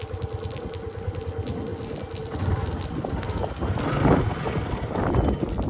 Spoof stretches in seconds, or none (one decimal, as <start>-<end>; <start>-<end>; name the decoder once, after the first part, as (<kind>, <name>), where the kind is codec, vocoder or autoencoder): none